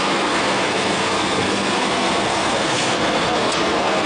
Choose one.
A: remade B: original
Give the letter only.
A